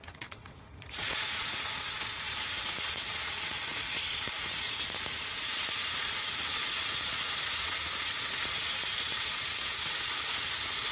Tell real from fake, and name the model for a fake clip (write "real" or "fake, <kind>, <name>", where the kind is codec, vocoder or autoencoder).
fake, vocoder, Vocos